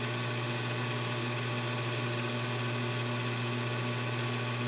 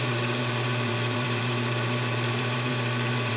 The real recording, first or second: first